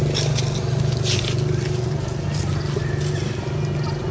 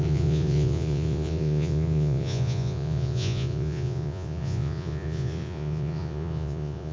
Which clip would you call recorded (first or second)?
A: first